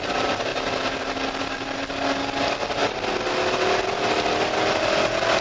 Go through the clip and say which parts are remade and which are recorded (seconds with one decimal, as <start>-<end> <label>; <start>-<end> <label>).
0.0-5.4 recorded